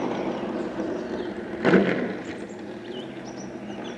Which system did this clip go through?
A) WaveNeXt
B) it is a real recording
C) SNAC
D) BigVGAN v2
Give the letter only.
B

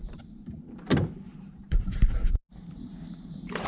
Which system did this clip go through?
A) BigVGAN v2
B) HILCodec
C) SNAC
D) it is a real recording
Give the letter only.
A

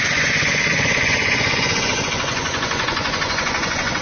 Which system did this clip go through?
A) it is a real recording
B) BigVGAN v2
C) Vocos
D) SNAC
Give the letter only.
C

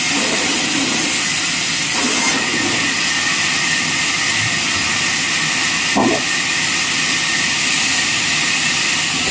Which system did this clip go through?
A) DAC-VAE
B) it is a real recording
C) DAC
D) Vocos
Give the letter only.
B